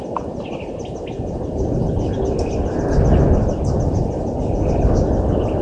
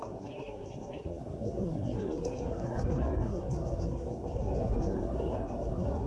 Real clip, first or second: first